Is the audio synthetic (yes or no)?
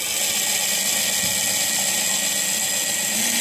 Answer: no